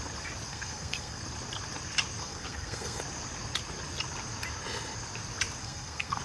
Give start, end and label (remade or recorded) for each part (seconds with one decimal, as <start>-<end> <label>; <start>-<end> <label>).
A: 0.0-0.5 recorded; 0.5-1.2 remade; 1.2-2.2 recorded; 2.2-3.0 remade; 3.0-5.6 recorded; 5.6-6.2 remade